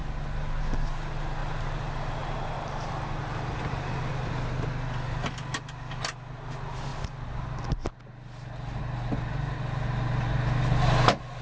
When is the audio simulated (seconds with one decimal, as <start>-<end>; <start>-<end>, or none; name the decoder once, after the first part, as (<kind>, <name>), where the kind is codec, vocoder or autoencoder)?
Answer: 1.4-4.1 (vocoder, BigVGAN v2)